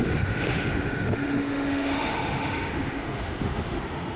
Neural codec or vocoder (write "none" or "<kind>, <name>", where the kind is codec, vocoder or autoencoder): autoencoder, DAC-VAE